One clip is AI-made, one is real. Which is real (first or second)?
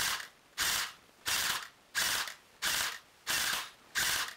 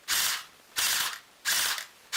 second